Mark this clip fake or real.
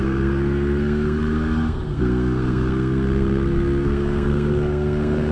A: fake